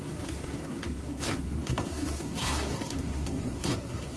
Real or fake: fake